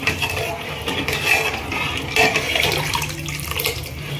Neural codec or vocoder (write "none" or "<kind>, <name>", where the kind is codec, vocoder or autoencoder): none